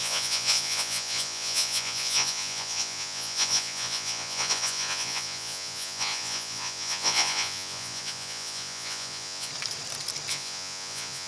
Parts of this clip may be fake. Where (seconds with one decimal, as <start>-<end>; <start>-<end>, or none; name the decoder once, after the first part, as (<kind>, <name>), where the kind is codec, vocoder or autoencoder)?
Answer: 0.0-9.5 (vocoder, Vocos); 10.3-11.3